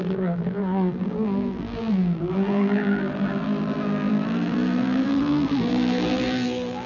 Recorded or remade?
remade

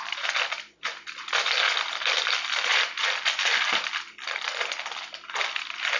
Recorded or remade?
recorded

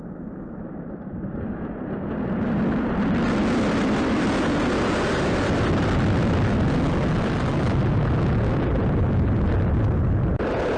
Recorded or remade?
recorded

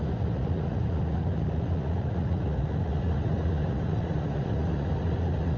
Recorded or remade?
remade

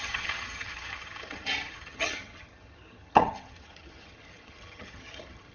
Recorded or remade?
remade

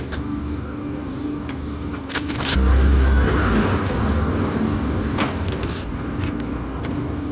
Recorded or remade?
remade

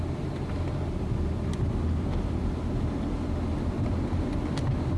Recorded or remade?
recorded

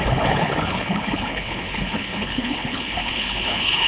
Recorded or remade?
remade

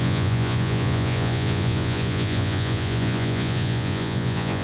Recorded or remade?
remade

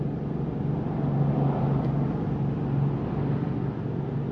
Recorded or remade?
recorded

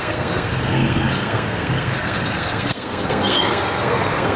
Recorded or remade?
remade